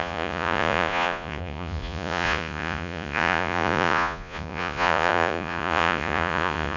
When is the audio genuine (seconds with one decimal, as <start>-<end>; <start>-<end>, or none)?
none